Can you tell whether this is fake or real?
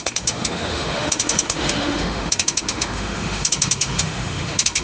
fake